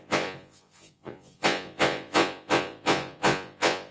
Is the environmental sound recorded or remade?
remade